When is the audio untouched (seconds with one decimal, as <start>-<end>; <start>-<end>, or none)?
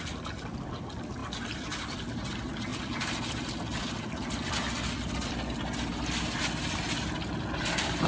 0.0-8.1